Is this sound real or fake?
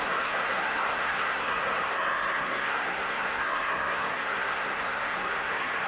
fake